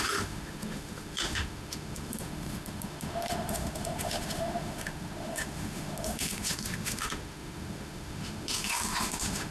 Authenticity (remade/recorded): remade